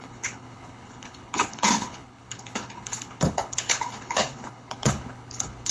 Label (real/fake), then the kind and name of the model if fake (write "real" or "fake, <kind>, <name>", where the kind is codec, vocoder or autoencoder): fake, codec, HILCodec